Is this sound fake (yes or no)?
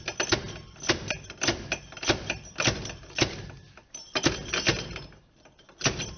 yes